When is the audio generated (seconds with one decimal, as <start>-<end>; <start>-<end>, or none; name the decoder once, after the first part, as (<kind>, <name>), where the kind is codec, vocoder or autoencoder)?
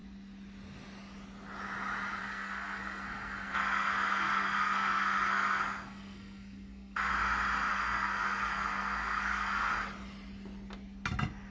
2.2-7.1 (codec, SNAC); 7.7-9.7